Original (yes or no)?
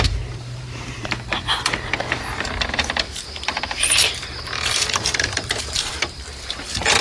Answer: no